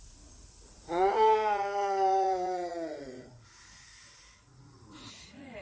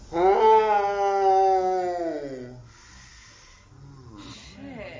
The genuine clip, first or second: second